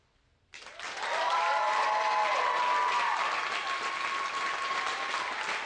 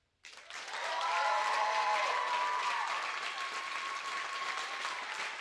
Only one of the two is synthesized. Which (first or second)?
second